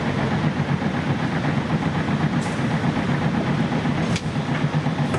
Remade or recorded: recorded